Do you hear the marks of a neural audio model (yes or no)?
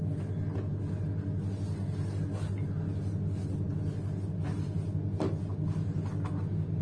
no